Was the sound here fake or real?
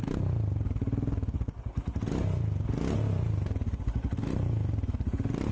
real